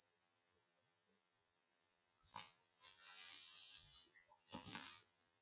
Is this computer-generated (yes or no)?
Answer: yes